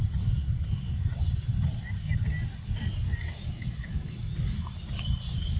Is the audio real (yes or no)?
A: yes